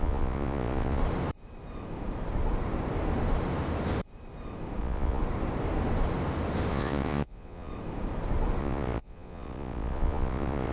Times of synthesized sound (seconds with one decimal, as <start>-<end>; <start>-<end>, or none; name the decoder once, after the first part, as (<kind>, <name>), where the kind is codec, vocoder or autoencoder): 0.0-1.0 (vocoder, Vocos); 4.8-5.2; 6.7-7.7; 8.6-10.7